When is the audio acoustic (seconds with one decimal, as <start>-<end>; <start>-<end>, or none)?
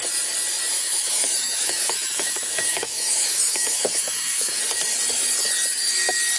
0.0-0.8; 4.6-6.4